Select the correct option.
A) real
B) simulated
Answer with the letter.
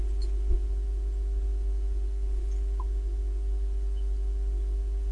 A